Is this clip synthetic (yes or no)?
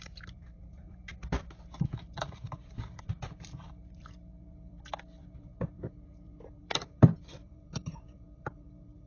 yes